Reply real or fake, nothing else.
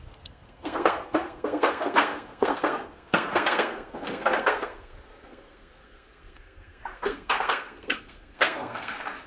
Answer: fake